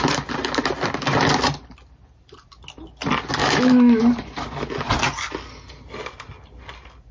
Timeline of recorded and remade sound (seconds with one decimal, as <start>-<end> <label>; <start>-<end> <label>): 0.0-3.4 recorded; 3.4-4.0 remade; 4.0-7.1 recorded